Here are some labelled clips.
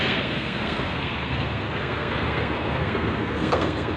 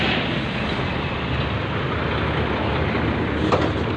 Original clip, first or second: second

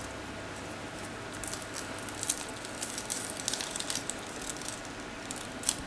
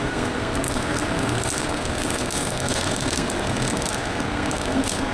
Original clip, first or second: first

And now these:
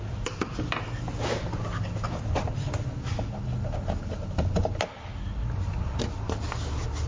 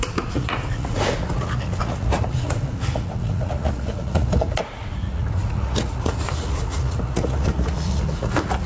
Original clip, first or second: first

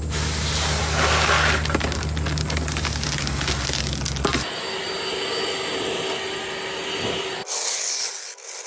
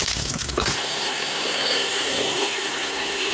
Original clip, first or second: first